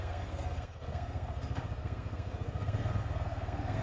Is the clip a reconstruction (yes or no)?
yes